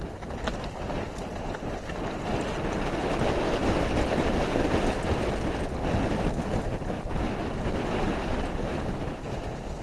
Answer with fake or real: real